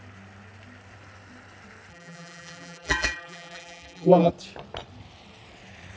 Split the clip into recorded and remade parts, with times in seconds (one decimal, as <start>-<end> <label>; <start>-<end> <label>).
0.0-1.9 recorded; 1.9-4.3 remade; 4.3-6.0 recorded